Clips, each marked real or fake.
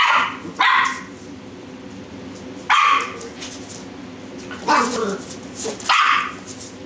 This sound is real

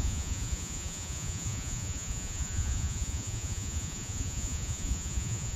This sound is fake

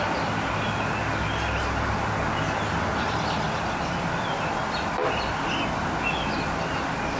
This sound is real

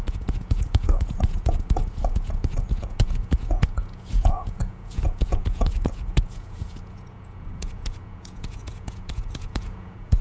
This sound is fake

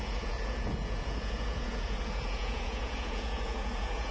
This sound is fake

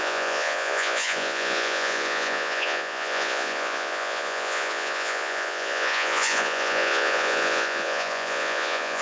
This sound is fake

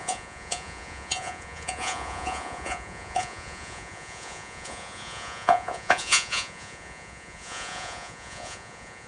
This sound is fake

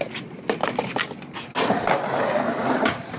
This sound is real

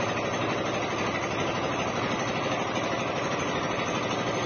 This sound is real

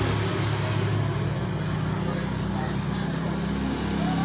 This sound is real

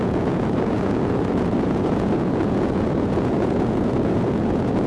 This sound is fake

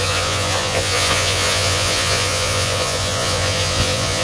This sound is fake